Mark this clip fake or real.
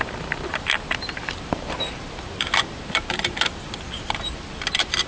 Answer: fake